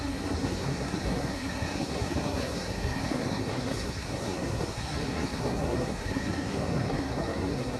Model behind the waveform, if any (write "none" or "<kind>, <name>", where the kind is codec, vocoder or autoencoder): codec, SNAC